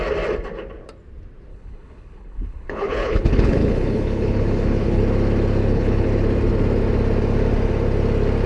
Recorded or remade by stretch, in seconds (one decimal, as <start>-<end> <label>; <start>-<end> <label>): 0.0-1.5 recorded; 1.5-5.0 remade; 5.0-5.6 recorded; 5.6-6.1 remade; 6.1-8.5 recorded